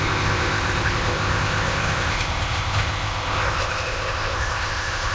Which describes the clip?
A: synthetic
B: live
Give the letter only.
A